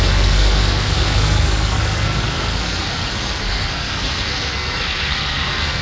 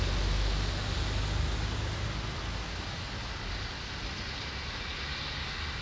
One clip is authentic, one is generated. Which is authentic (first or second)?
second